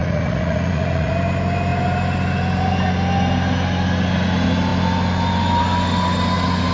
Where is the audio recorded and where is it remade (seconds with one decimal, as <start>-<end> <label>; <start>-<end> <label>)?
0.0-1.1 remade; 1.1-6.7 recorded